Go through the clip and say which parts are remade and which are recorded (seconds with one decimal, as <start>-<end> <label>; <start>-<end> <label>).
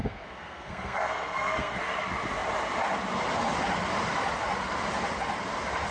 0.0-1.8 remade; 1.8-5.9 recorded